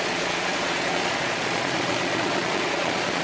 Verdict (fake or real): fake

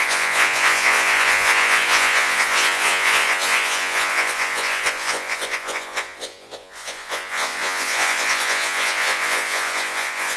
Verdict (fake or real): fake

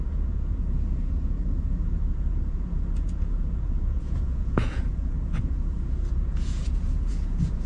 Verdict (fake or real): fake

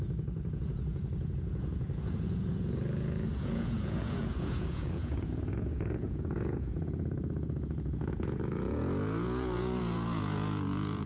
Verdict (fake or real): fake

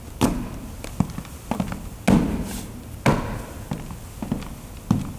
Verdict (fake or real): real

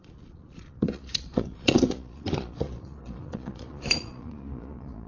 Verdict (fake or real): fake